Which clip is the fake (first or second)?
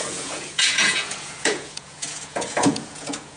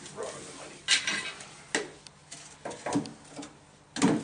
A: first